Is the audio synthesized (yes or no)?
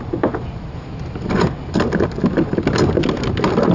no